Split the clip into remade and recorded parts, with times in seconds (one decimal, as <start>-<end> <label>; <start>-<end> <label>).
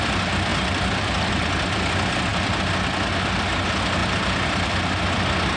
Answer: 0.0-0.5 recorded; 0.5-1.3 remade; 1.3-2.3 recorded; 2.3-3.1 remade; 3.1-5.6 recorded